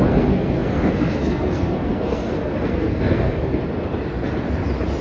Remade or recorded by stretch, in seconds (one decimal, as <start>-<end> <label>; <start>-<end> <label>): 0.0-3.6 remade; 3.6-5.0 recorded